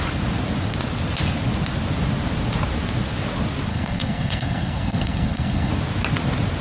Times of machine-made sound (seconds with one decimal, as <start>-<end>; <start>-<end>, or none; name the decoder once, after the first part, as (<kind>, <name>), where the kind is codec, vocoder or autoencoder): 3.7-5.7 (codec, SNAC)

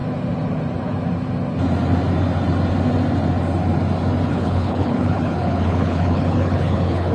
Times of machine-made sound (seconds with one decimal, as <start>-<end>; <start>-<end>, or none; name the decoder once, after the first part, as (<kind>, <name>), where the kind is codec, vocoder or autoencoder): 4.3-7.1 (codec, HILCodec)

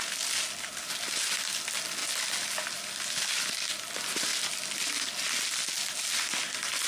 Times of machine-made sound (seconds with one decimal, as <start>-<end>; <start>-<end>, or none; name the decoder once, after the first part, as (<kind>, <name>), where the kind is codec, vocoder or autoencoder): none